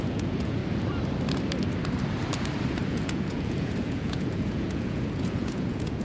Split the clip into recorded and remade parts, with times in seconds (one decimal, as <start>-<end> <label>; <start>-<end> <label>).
0.0-0.6 remade; 0.6-2.9 recorded; 2.9-6.0 remade